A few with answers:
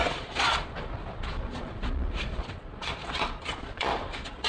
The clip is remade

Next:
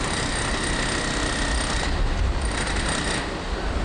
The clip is recorded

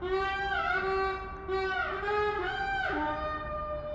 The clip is recorded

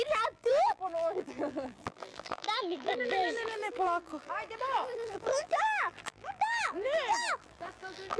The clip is remade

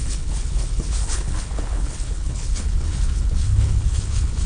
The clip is remade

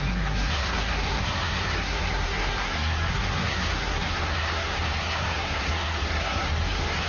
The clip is remade